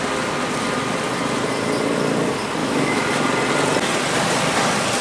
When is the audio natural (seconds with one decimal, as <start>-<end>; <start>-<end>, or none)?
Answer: 0.0-2.6; 3.1-5.0